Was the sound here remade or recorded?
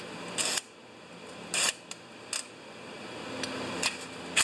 recorded